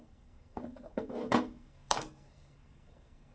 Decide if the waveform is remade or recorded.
remade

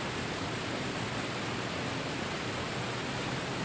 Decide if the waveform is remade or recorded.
recorded